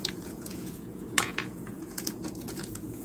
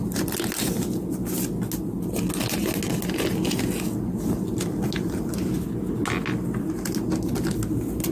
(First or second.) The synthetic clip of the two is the first